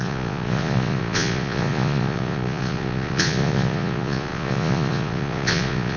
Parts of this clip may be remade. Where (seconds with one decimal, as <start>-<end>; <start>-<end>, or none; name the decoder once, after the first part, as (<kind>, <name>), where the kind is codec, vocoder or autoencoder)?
0.0-6.0 (vocoder, Vocos)